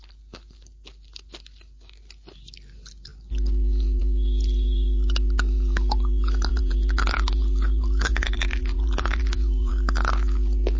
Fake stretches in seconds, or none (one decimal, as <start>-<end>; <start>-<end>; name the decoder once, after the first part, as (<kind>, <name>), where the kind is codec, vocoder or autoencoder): 6.5-9.7 (vocoder, BigVGAN v2)

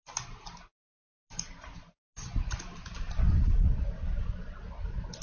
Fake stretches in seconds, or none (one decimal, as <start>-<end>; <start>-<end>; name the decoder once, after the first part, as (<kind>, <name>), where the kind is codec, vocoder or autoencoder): none

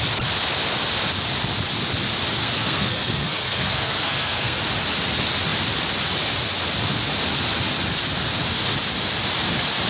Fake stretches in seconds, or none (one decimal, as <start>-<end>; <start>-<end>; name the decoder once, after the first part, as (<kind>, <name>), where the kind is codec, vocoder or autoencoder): 2.4-4.6 (codec, SNAC)

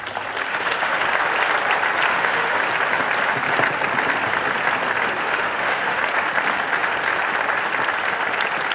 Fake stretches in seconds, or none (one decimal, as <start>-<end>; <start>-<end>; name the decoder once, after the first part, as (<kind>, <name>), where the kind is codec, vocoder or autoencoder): 0.5-1.1 (autoencoder, DAC-VAE); 2.1-2.6; 5.2-6.0

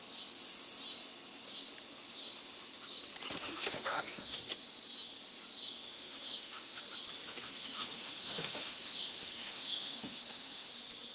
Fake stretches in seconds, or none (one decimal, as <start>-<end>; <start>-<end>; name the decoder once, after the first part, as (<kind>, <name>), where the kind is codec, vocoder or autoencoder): 3.4-4.4 (autoencoder, DAC-VAE); 5.9-6.8; 7.3-10.7

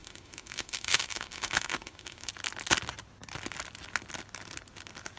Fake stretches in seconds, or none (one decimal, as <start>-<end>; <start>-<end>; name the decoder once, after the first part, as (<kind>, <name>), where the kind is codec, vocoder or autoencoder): 0.0-2.3 (autoencoder, DAC-VAE)

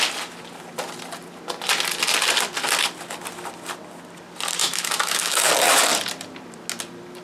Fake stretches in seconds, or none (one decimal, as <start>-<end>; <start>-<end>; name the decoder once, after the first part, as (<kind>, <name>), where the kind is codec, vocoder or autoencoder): 4.6-5.5 (autoencoder, DAC-VAE)

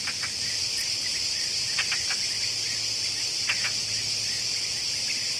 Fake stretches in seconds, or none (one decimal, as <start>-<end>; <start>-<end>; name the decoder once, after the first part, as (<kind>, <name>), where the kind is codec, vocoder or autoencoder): none